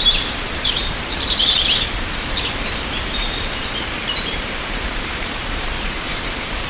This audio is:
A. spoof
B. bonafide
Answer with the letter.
A